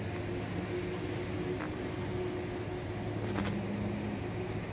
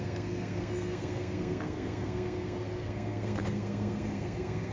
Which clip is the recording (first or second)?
first